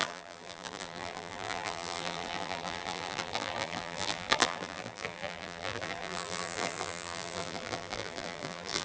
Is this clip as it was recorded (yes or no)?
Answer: no